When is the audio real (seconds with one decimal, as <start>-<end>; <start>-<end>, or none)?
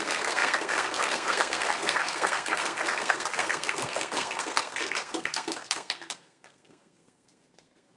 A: none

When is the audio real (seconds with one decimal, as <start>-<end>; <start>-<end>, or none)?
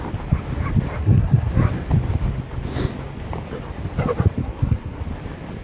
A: 0.0-1.0; 1.5-4.4; 5.0-5.6